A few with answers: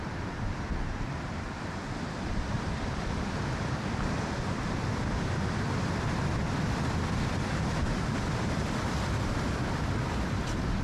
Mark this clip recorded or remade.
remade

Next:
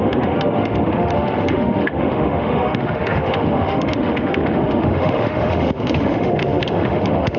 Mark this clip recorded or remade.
remade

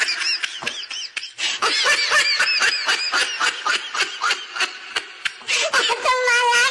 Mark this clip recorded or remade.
recorded